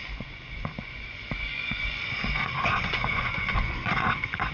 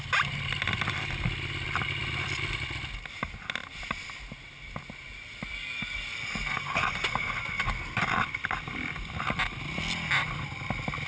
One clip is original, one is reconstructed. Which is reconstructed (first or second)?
first